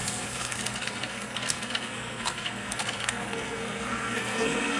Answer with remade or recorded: remade